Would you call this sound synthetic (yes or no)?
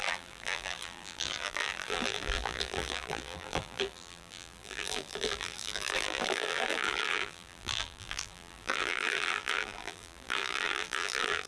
yes